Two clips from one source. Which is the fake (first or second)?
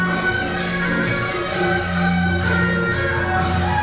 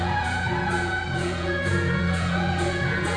second